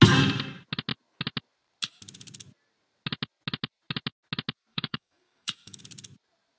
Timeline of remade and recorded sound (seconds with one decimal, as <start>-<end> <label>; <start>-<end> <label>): 0.0-4.7 recorded; 4.7-5.8 remade; 5.8-6.6 recorded